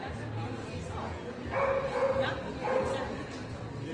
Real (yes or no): yes